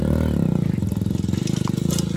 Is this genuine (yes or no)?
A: yes